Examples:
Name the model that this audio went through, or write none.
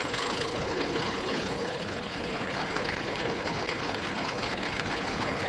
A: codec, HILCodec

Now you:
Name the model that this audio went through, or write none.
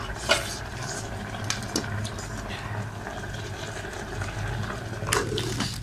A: none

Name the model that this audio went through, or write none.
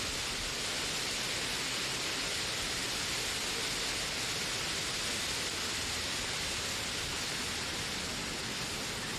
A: none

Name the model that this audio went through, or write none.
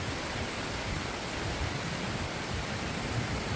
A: none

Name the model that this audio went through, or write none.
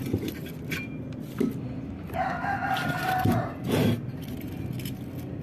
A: none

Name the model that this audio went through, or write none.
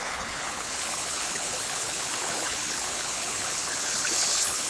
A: codec, HILCodec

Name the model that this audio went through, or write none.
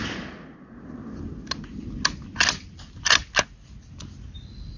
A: none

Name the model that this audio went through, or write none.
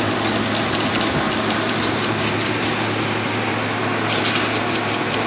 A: none